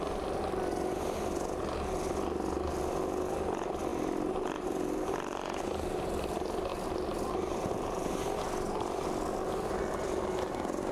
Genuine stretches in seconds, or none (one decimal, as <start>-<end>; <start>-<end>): 0.0-3.9; 6.3-6.7; 8.2-10.9